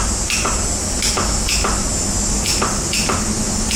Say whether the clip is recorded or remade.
recorded